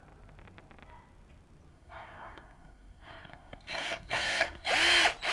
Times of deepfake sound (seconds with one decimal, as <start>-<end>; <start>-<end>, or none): 1.7-4.7